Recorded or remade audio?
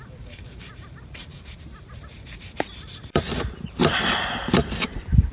remade